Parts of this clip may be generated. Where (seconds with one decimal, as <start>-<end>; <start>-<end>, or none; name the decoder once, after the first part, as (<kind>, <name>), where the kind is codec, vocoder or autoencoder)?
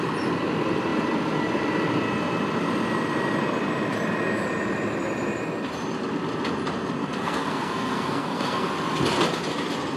7.0-8.7 (codec, SNAC)